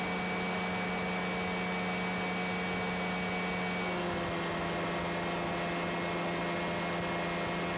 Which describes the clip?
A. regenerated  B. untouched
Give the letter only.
B